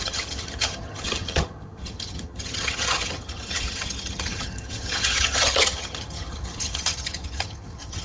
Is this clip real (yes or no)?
no